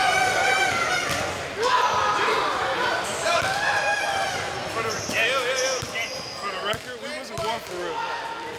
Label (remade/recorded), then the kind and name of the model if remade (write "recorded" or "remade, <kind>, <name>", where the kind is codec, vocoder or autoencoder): recorded